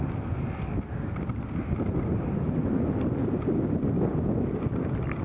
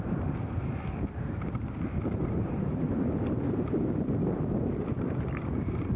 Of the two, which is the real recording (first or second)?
first